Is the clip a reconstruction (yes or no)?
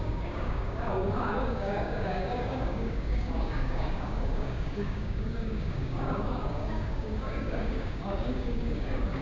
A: yes